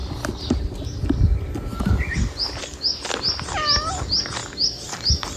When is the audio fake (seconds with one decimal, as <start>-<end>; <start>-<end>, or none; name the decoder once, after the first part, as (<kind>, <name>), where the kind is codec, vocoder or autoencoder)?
none